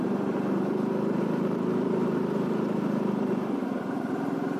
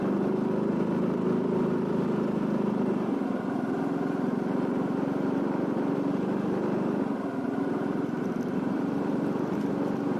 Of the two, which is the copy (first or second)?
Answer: first